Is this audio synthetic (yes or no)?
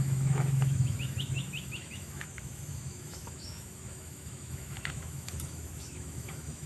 yes